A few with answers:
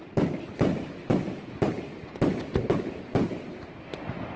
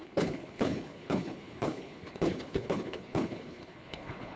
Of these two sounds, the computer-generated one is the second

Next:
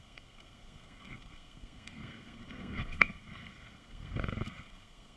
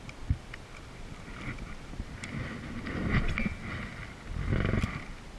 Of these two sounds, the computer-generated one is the first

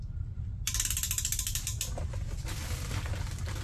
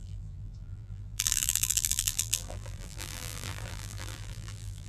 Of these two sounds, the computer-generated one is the second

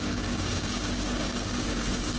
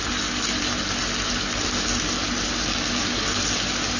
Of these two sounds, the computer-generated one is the first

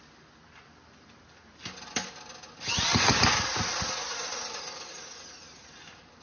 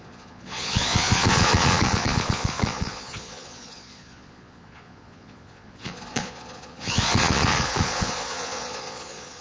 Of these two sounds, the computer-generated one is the second